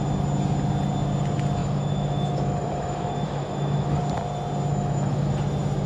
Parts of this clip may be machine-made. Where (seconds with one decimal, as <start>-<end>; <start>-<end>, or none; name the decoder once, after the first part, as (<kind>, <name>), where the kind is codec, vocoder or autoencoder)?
1.6-4.0 (autoencoder, DAC-VAE); 4.7-5.3